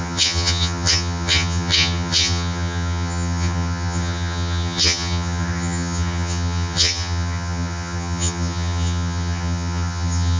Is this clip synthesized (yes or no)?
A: yes